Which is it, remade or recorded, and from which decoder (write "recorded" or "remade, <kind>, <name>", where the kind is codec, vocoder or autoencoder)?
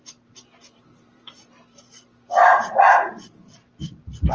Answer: remade, vocoder, BigVGAN v2